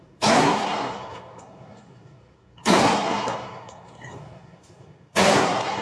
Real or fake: fake